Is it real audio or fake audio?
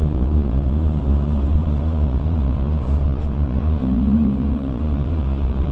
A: fake